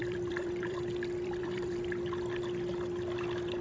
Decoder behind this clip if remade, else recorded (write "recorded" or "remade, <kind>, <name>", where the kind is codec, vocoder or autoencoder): remade, vocoder, BigVGAN v2